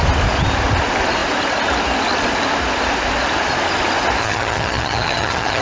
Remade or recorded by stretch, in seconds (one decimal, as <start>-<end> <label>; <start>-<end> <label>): 0.0-4.2 recorded; 4.2-5.6 remade